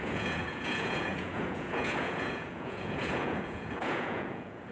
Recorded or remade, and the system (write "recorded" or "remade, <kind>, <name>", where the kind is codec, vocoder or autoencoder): remade, vocoder, Vocos